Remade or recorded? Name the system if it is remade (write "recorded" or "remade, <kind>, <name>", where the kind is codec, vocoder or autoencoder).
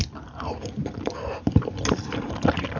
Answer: recorded